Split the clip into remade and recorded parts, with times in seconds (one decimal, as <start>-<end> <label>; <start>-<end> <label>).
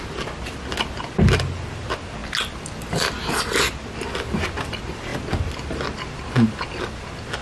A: 0.0-7.4 recorded